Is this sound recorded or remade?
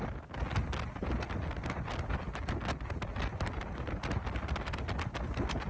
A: recorded